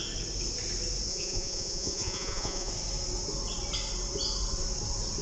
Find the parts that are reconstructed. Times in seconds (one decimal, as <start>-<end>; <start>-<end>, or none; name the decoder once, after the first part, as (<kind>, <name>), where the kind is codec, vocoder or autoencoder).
1.1-2.7 (vocoder, Vocos)

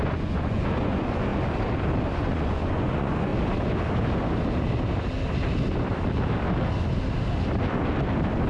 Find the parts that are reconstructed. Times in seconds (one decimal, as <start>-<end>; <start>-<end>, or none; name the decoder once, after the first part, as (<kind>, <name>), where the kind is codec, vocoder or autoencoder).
0.0-1.3 (vocoder, Vocos); 2.1-3.3

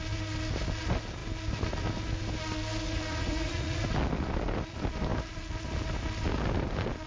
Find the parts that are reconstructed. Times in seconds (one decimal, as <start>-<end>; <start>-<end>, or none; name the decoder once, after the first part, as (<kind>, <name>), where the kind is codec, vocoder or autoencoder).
3.1-3.8 (vocoder, Vocos)

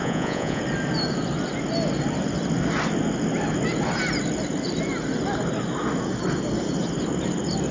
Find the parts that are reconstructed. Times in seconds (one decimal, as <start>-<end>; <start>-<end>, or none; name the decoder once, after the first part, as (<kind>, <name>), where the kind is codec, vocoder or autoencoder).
0.0-0.6 (vocoder, Vocos)

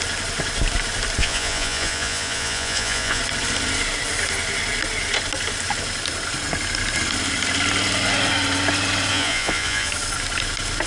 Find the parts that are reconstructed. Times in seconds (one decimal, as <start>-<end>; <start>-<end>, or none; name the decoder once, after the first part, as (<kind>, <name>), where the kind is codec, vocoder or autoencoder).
1.2-3.2 (vocoder, Vocos); 9.1-9.9

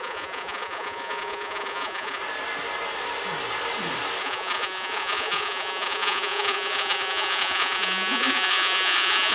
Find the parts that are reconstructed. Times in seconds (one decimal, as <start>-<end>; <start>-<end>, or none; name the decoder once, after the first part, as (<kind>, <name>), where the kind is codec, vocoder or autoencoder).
0.0-2.2 (vocoder, Vocos); 4.2-9.3